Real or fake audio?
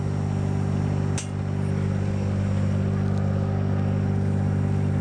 real